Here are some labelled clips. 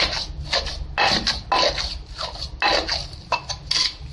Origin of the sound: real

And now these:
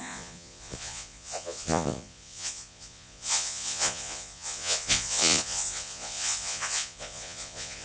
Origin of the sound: fake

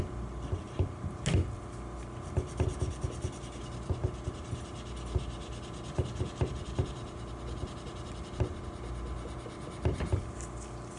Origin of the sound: real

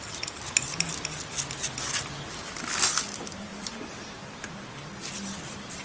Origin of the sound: real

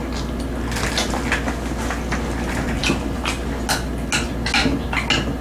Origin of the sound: real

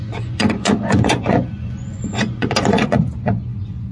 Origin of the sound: fake